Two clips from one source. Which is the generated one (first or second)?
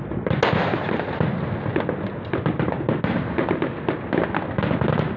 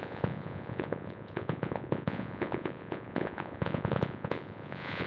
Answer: second